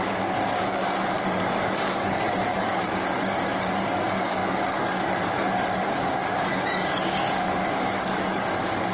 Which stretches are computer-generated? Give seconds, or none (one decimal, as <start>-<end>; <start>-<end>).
0.0-8.9